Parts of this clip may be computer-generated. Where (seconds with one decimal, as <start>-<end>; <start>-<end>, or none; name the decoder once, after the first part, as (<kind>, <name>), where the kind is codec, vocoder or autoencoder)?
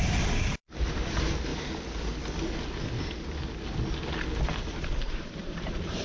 0.0-1.5 (vocoder, BigVGAN v2); 5.1-6.0